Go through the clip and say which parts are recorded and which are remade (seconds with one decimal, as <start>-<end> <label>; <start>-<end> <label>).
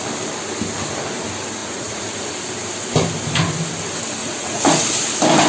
0.0-1.6 recorded; 1.6-2.3 remade; 2.3-4.2 recorded; 4.2-4.9 remade; 4.9-5.5 recorded